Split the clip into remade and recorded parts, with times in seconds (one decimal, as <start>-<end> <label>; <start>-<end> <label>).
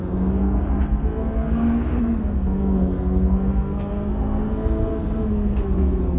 0.0-6.2 remade